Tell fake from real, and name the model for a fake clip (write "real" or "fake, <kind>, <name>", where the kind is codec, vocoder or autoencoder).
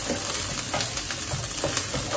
real